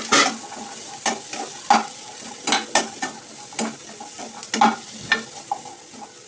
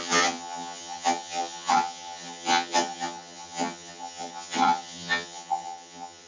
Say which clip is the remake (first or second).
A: second